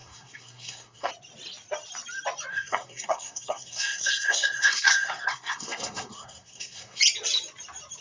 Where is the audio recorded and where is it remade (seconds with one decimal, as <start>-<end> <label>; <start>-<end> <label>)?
0.0-1.1 remade; 1.1-2.5 recorded; 2.5-7.0 remade; 7.0-8.0 recorded